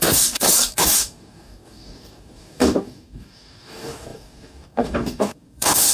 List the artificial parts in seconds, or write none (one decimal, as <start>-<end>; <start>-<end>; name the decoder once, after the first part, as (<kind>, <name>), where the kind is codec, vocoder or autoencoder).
0.0-5.9 (codec, DAC)